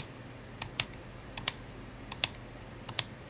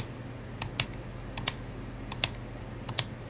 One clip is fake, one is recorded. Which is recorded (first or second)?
second